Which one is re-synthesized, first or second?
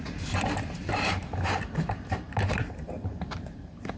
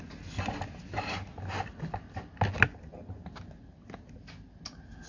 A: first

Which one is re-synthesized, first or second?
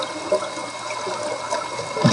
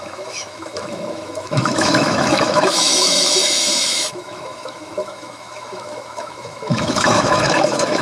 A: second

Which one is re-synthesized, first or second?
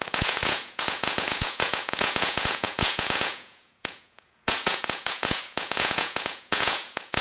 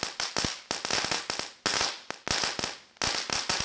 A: first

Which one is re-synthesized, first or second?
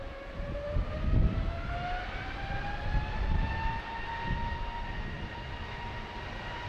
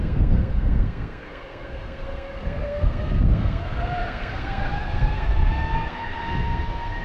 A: second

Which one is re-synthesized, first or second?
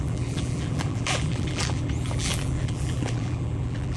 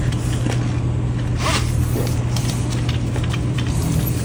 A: first